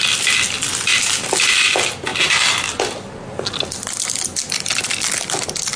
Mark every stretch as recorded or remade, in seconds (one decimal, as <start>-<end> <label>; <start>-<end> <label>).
0.0-5.8 recorded